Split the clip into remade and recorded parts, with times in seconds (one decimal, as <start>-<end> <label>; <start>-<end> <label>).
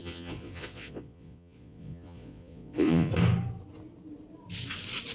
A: 0.0-3.1 remade; 3.1-5.1 recorded